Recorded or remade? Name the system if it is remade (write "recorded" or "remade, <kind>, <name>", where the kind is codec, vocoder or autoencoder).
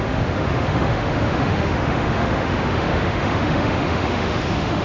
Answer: remade, autoencoder, DAC-VAE